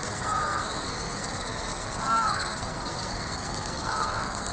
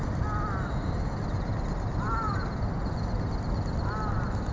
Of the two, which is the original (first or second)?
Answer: second